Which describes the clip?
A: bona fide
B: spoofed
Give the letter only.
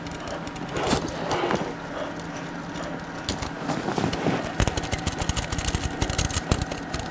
A